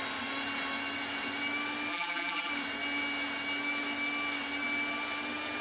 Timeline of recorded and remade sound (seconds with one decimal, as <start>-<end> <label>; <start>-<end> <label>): 0.0-1.9 recorded; 1.9-2.5 remade; 2.5-5.6 recorded